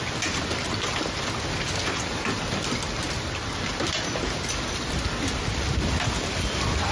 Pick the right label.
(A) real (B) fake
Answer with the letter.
A